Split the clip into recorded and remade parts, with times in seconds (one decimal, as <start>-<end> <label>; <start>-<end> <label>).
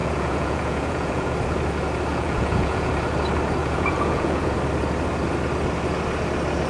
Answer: 0.0-1.3 remade; 1.3-2.1 recorded; 2.1-2.9 remade; 2.9-3.6 recorded; 3.6-4.5 remade; 4.5-6.7 recorded